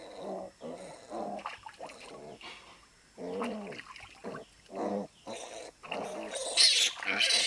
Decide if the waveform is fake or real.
real